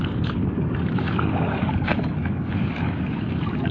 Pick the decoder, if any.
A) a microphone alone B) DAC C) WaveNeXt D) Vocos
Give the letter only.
B